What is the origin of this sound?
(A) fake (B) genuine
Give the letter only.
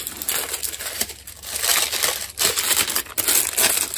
B